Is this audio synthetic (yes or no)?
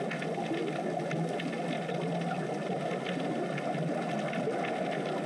no